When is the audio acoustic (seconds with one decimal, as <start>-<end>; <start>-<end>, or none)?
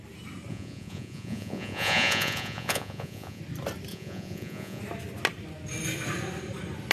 0.0-0.5; 3.4-3.9; 4.8-6.9